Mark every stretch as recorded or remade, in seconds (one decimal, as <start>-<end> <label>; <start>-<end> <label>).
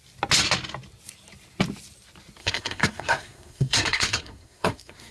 0.0-2.4 recorded; 2.4-5.1 remade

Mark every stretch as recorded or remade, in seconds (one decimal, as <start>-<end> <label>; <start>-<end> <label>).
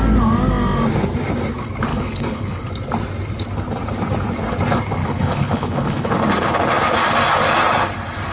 0.0-1.9 recorded; 1.9-2.7 remade; 2.7-5.0 recorded; 5.0-6.1 remade; 6.1-8.3 recorded